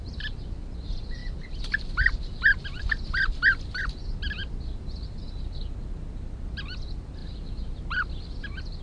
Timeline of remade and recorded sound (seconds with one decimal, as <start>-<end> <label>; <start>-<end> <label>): 0.0-8.8 recorded